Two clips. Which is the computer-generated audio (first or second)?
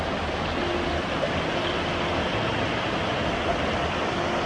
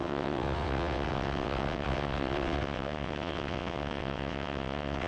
second